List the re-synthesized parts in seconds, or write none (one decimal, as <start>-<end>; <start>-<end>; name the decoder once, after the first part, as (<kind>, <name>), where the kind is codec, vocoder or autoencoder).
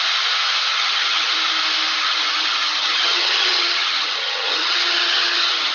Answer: 0.7-1.3 (vocoder, HiFi-GAN); 2.0-5.7